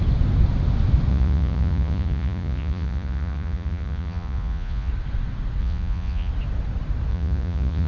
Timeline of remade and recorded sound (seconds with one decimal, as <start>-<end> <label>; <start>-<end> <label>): 0.0-1.1 recorded; 1.1-4.9 remade; 4.9-5.6 recorded; 5.6-6.3 remade; 6.3-7.1 recorded; 7.1-7.9 remade